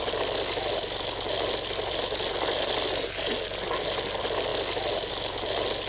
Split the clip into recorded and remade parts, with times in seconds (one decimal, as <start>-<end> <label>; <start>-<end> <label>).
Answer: 0.0-5.9 recorded